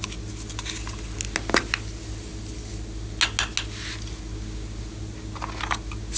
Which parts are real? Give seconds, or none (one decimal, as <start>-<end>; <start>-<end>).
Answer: 0.0-6.2